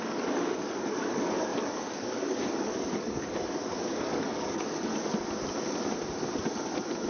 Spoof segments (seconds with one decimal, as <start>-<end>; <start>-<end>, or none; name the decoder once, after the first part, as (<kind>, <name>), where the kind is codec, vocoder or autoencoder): 0.0-4.9 (codec, DAC)